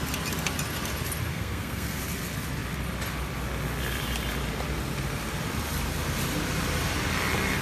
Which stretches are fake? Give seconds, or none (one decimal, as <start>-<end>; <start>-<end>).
1.3-2.0